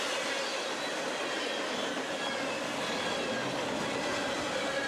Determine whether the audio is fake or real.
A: real